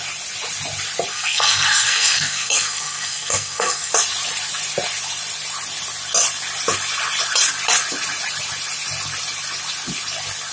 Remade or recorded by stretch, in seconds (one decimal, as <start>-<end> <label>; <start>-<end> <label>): 0.0-1.1 recorded; 1.1-3.9 remade; 3.9-10.5 recorded

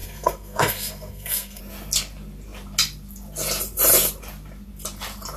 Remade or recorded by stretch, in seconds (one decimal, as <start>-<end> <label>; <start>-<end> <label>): 0.0-1.6 remade; 1.6-5.4 recorded

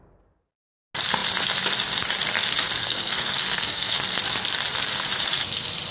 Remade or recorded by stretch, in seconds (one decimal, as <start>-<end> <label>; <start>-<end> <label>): 0.0-2.8 recorded; 2.8-4.0 remade; 4.0-5.9 recorded